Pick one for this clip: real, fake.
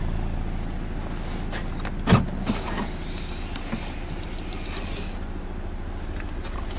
real